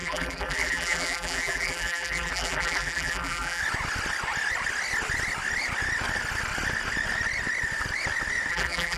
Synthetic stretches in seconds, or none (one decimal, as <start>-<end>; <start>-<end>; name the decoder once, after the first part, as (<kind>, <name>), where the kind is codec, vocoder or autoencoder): 0.0-3.6 (vocoder, BigVGAN v2); 8.5-9.0